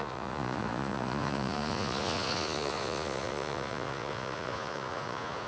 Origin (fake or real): fake